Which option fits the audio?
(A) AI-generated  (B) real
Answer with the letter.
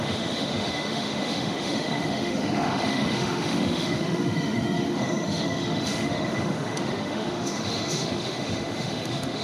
A